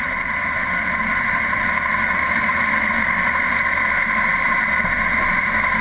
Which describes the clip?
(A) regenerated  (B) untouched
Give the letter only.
B